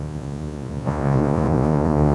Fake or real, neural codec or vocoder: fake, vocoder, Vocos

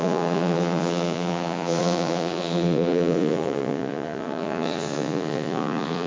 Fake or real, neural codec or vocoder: fake, vocoder, Vocos